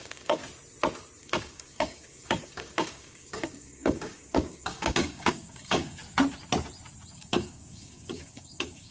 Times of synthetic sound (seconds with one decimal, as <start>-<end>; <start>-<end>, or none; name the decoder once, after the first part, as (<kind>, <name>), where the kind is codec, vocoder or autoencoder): 0.0-0.4 (codec, DAC); 1.2-6.0; 7.1-8.9